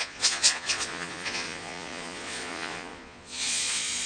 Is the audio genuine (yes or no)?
no